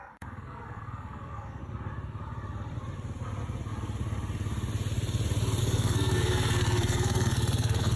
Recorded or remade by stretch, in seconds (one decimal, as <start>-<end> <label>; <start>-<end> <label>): 0.0-1.6 remade; 1.6-5.6 recorded; 5.6-8.0 remade

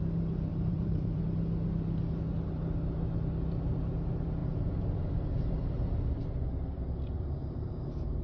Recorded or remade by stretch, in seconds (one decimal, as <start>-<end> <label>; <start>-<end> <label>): 0.0-0.5 recorded; 0.5-1.2 remade; 1.2-4.4 recorded; 4.4-6.2 remade; 6.2-7.4 recorded; 7.4-8.2 remade

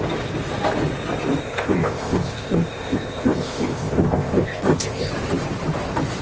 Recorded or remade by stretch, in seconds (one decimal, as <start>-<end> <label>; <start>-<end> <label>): 0.0-1.4 recorded; 1.4-5.1 remade; 5.1-6.2 recorded

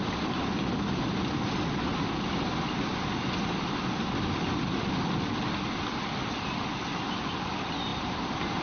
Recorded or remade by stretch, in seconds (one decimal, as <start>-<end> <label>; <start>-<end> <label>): 0.0-7.9 recorded; 7.9-8.6 remade

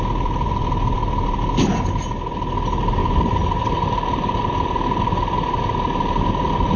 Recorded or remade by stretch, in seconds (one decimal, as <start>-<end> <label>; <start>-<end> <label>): 0.0-3.0 recorded; 3.0-6.3 remade; 6.3-6.8 recorded

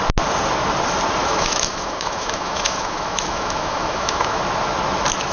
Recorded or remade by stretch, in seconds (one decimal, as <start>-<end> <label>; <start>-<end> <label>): 0.0-1.2 recorded; 1.2-4.4 remade; 4.4-5.3 recorded